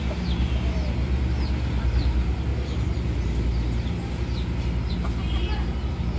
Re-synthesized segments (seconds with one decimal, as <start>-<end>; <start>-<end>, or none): none